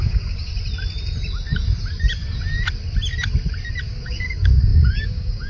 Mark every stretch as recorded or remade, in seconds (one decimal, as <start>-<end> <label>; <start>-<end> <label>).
0.0-0.5 remade; 0.5-3.8 recorded; 3.8-5.5 remade